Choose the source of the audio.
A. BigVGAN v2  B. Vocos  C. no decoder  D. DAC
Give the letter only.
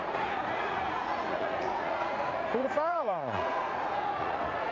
B